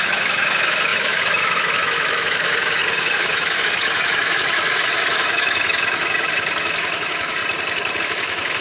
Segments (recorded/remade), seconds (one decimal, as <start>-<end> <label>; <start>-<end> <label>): 0.0-7.4 remade; 7.4-8.0 recorded; 8.0-8.6 remade